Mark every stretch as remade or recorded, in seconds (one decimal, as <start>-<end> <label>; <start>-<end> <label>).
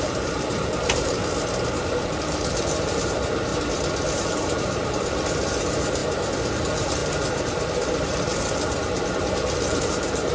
0.0-1.2 remade; 1.2-1.8 recorded; 1.8-3.5 remade; 3.5-4.1 recorded; 4.1-6.0 remade; 6.0-6.5 recorded; 6.5-10.3 remade